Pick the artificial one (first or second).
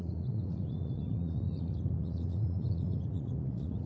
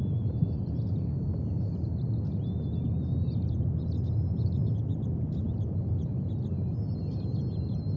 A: first